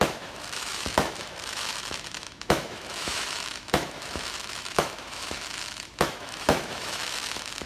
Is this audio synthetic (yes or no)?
yes